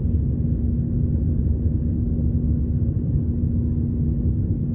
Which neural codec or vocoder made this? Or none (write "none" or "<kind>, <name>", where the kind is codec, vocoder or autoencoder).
none